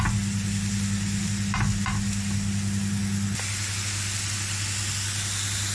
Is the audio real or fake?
real